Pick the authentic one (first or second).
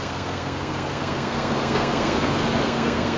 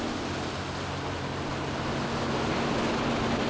second